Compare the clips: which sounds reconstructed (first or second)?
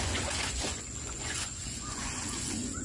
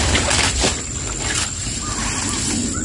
first